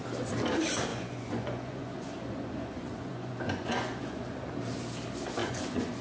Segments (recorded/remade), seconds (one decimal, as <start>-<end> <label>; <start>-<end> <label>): 0.0-0.9 recorded; 0.9-4.5 remade; 4.5-5.4 recorded; 5.4-6.0 remade